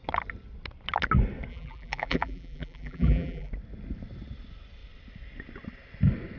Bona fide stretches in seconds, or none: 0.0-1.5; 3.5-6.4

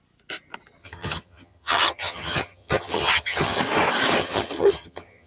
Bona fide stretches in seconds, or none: 0.0-0.8; 3.6-4.2

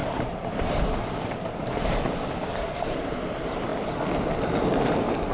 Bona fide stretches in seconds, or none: 3.7-4.6

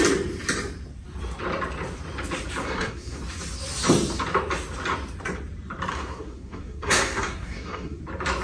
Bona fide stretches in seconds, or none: 0.0-2.6; 3.2-5.9; 8.0-8.4

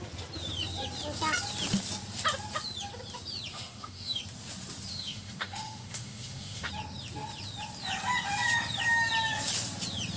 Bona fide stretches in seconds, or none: 0.0-3.5; 4.2-4.9; 6.7-10.2